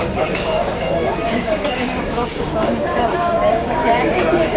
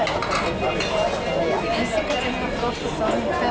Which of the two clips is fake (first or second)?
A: first